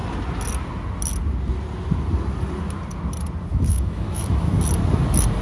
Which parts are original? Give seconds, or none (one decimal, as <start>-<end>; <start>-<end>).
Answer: 0.0-3.5; 4.6-5.4

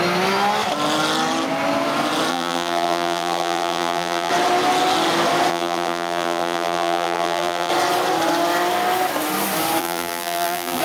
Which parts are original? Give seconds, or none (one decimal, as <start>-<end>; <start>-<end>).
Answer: 0.0-2.3; 4.3-5.5; 7.7-9.8